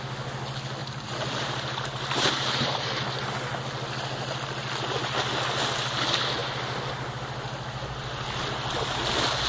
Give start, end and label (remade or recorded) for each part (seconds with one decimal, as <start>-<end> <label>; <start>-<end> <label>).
0.0-0.8 recorded; 0.8-3.3 remade; 3.3-9.5 recorded